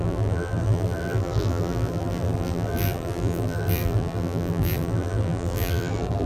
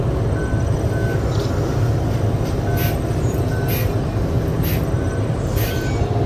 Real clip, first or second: second